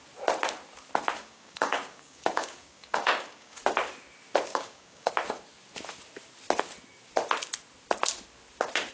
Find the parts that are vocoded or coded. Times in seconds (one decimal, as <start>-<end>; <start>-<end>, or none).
1.2-3.6; 4.5-5.1